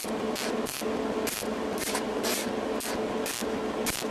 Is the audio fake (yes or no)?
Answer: no